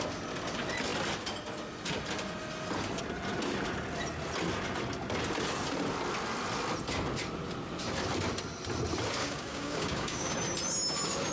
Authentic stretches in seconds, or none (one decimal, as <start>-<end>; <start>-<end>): 0.0-9.2; 10.3-11.3